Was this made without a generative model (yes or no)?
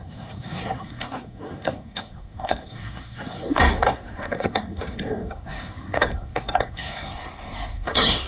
no